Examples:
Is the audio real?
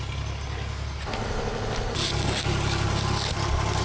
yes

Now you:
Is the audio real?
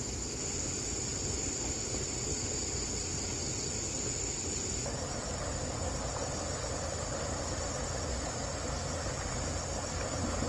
yes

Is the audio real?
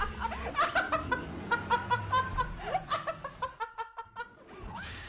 yes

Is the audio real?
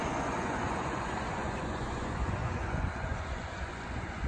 no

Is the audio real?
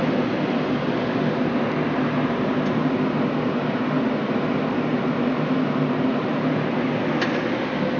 yes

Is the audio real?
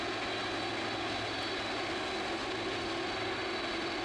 yes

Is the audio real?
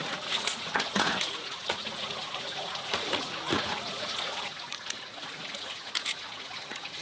no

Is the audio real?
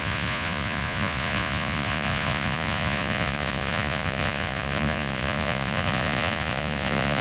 no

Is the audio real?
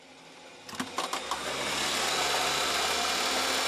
yes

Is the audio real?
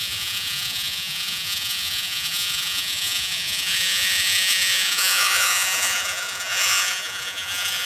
no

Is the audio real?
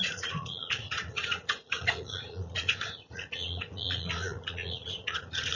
no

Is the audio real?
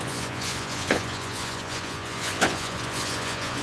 no